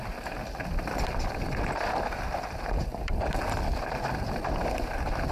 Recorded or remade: remade